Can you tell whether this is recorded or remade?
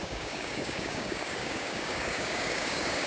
remade